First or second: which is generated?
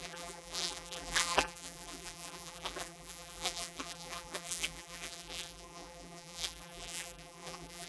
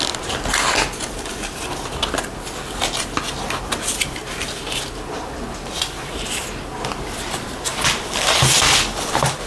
first